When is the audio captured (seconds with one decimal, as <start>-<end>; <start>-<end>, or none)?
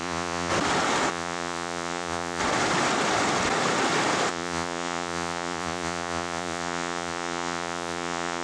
0.5-1.1; 2.4-4.3